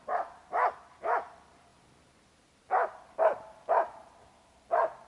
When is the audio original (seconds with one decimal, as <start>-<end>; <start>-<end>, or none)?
1.7-5.1